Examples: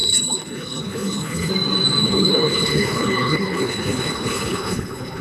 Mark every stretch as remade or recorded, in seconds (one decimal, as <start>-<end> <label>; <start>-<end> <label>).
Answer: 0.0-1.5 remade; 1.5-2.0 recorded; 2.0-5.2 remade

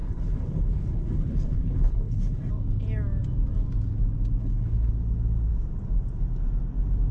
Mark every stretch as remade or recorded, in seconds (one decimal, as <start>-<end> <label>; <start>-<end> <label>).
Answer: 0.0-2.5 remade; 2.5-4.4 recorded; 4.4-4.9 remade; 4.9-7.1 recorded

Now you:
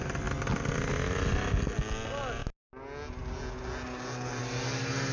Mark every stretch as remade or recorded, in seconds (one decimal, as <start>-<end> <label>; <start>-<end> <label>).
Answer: 0.0-5.1 recorded